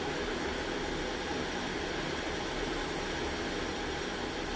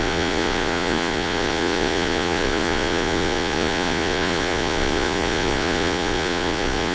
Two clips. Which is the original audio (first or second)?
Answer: first